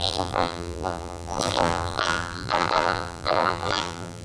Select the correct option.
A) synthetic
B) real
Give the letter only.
A